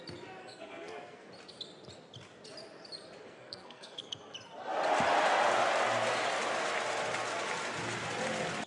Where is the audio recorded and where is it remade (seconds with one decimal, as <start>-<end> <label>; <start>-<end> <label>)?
0.0-0.4 recorded; 0.4-1.3 remade; 1.3-3.2 recorded; 3.2-4.2 remade; 4.2-8.7 recorded